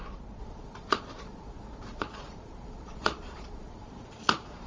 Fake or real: fake